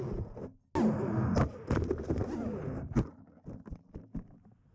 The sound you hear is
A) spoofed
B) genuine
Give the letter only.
B